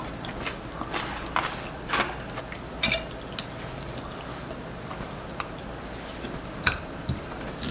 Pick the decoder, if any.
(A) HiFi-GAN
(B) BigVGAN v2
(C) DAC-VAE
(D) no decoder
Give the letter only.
D